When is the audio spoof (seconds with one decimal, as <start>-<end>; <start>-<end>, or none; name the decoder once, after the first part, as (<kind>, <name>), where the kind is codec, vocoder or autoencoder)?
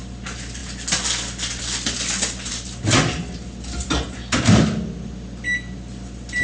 none